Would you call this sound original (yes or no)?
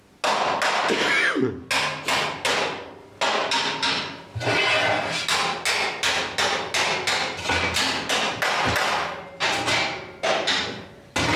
yes